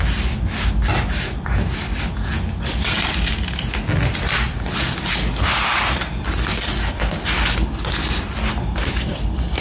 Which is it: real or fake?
real